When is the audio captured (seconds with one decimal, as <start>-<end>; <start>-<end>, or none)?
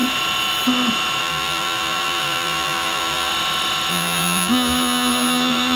0.0-1.2; 3.3-3.9